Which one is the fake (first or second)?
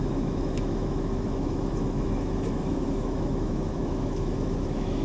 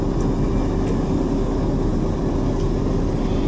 first